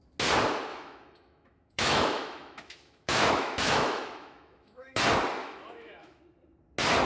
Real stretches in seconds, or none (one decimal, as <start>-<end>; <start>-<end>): 0.0-0.7; 5.0-5.4; 6.2-7.1